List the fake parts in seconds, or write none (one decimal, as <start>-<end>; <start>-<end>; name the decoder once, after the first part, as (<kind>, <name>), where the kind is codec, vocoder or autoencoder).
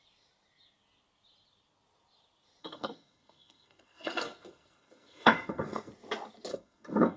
2.6-5.9 (codec, SNAC); 6.5-7.2